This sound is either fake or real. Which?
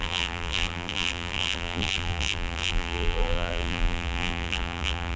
fake